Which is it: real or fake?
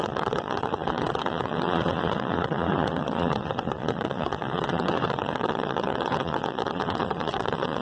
fake